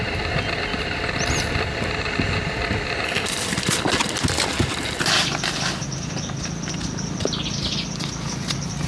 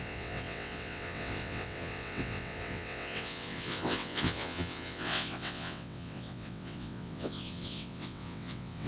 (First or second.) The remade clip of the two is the second